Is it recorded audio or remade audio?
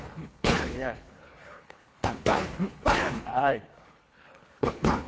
remade